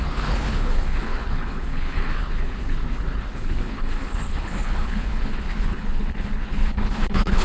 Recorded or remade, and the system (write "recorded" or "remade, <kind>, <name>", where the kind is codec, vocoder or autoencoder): remade, codec, HILCodec